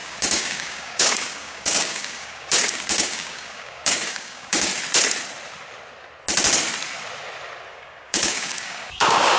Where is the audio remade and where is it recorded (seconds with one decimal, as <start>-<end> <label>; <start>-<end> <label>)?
0.0-4.7 remade; 4.7-7.7 recorded; 7.7-9.4 remade